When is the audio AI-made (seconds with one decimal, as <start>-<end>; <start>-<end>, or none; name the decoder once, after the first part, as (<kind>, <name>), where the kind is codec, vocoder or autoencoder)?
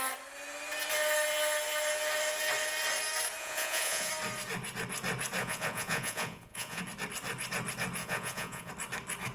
3.4-4.1 (vocoder, Vocos); 5.4-6.8; 8.0-8.7